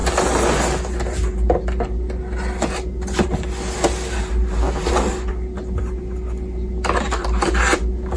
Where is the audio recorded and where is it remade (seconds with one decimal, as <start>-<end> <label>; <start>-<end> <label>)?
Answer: 0.0-8.2 recorded